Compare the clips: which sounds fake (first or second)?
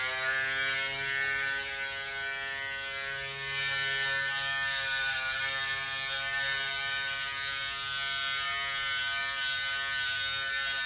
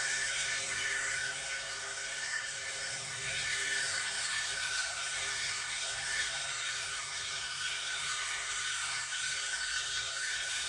second